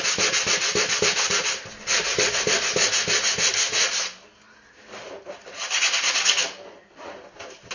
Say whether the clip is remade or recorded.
recorded